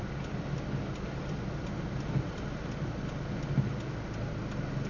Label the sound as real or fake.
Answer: real